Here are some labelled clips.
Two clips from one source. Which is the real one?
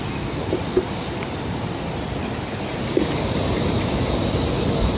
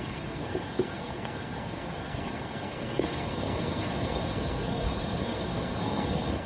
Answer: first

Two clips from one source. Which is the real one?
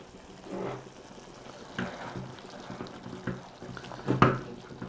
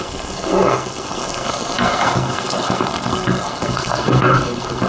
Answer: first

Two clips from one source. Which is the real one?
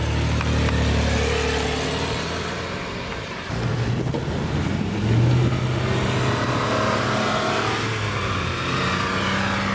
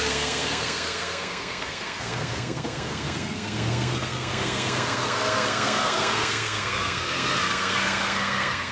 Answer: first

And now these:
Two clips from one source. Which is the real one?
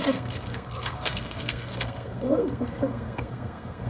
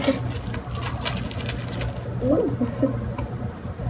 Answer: second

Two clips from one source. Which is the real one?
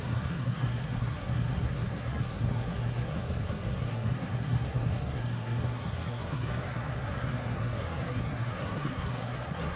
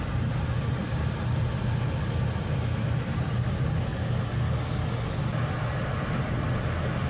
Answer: second